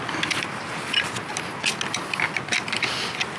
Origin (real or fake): real